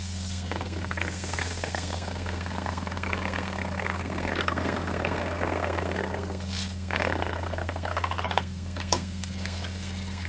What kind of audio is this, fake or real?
fake